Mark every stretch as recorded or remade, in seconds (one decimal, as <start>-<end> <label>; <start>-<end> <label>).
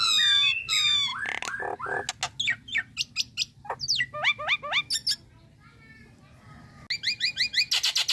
0.0-8.1 recorded